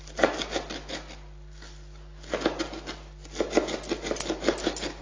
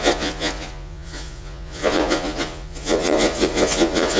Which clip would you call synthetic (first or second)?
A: second